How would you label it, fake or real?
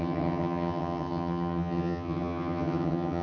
fake